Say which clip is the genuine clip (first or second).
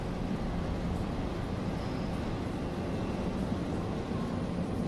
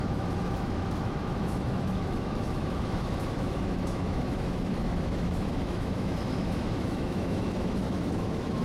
first